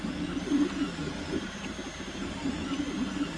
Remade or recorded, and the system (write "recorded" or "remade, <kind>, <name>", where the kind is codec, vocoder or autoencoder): recorded